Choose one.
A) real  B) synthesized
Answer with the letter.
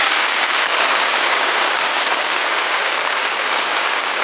B